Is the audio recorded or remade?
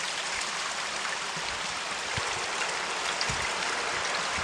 recorded